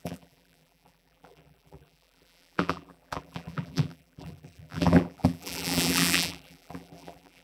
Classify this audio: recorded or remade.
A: remade